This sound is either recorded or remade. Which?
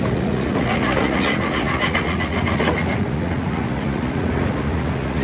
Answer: remade